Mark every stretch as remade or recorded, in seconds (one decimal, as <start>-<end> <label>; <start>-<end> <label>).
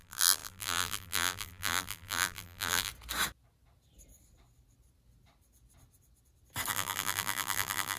0.0-2.9 remade; 2.9-6.7 recorded; 6.7-8.0 remade